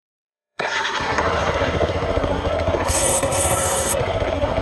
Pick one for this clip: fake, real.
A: fake